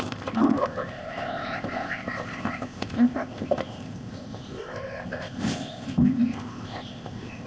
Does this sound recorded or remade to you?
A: remade